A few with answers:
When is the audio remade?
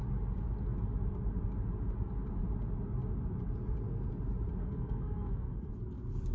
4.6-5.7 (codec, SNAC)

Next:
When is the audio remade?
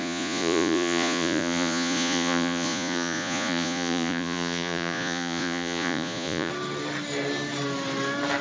0.0-6.5 (vocoder, Vocos)